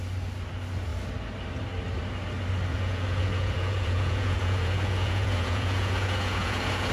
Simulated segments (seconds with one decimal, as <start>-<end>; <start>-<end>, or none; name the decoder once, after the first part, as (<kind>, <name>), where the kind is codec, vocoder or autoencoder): 2.7-6.9 (vocoder, Vocos)